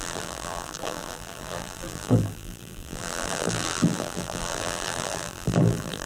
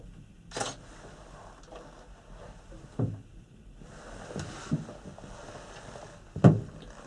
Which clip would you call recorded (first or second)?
second